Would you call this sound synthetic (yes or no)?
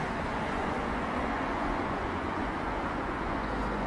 yes